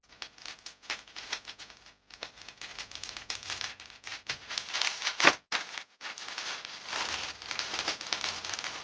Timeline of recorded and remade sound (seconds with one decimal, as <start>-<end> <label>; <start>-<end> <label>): 0.0-8.8 recorded